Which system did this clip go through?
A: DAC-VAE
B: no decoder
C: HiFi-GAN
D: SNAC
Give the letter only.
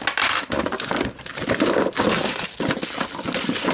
B